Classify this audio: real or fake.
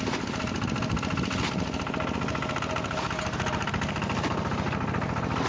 real